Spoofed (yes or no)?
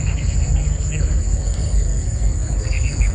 yes